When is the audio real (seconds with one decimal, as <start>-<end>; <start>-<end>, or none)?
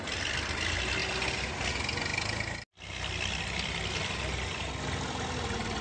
0.0-5.8